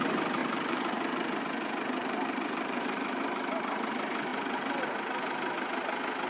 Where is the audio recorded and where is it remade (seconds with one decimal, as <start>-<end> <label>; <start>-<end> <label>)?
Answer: 0.0-0.4 recorded; 0.4-1.4 remade; 1.4-2.0 recorded; 2.0-3.2 remade; 3.2-6.3 recorded